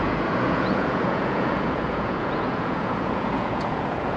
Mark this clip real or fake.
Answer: fake